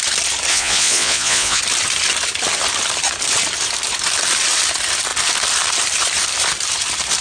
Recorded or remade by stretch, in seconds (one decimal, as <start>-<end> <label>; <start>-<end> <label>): 0.0-0.5 recorded; 0.5-1.6 remade; 1.6-7.2 recorded